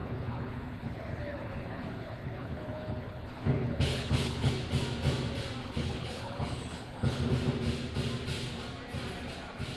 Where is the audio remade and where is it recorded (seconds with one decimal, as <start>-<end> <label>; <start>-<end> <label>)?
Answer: 0.0-4.5 remade; 4.5-5.6 recorded; 5.6-7.2 remade; 7.2-9.8 recorded